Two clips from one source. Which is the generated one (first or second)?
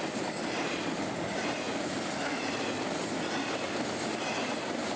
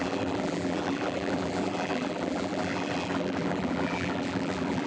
second